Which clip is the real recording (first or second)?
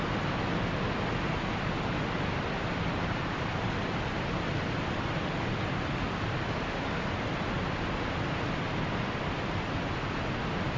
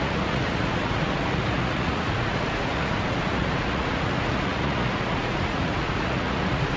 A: first